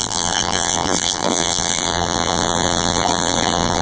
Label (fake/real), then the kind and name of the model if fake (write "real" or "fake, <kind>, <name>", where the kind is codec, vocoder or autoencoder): fake, vocoder, BigVGAN v2